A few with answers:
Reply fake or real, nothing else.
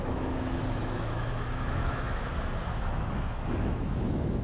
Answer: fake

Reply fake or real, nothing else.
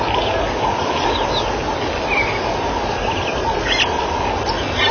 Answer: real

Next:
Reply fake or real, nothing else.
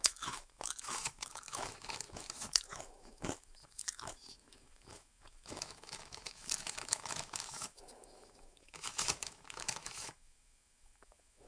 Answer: fake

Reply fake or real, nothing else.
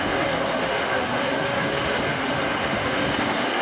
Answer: fake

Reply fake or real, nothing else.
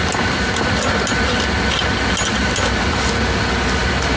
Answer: real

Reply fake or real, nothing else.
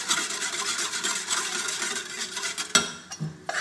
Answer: real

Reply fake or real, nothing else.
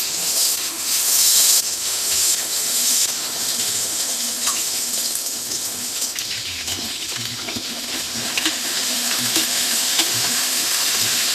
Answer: fake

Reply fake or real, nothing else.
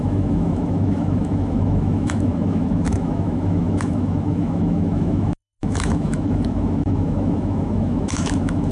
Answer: fake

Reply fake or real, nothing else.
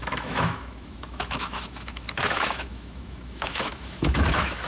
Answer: fake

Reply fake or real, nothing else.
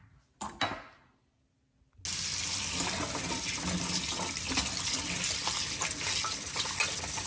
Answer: real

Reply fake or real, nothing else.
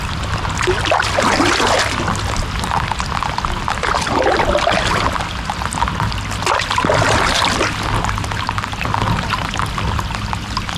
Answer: real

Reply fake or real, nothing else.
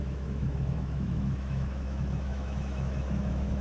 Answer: fake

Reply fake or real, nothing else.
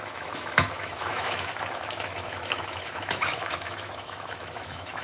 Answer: fake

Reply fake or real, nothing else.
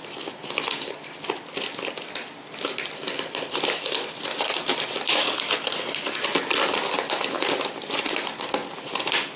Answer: real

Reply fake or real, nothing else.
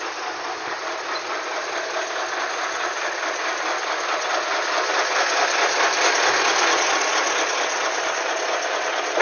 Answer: real